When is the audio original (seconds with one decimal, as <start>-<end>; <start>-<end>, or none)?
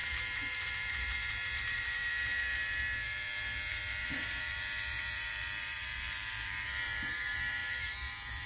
none